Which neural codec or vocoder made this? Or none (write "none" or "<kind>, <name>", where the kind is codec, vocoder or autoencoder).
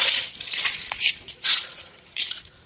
vocoder, Vocos